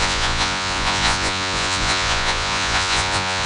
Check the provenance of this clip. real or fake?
fake